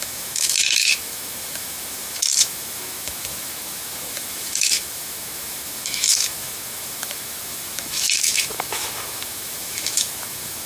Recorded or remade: remade